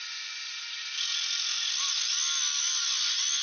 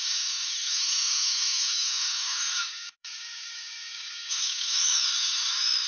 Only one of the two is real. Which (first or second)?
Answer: first